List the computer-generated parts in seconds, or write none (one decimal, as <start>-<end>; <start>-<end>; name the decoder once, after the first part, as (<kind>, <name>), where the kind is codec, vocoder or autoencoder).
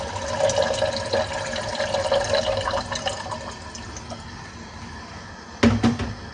none